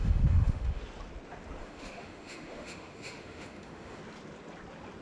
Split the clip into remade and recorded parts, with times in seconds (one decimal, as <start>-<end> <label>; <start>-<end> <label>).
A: 0.0-0.8 remade; 0.8-1.6 recorded; 1.6-4.0 remade; 4.0-5.0 recorded

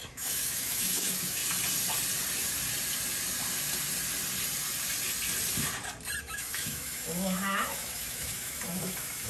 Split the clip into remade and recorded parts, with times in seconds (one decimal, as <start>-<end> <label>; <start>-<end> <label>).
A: 0.0-1.4 remade; 1.4-6.2 recorded; 6.2-9.3 remade